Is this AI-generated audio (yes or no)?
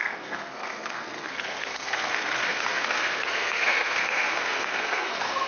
yes